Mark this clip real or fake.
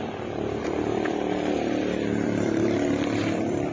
fake